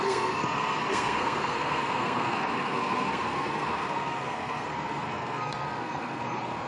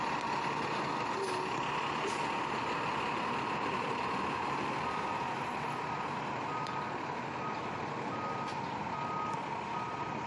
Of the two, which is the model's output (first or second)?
first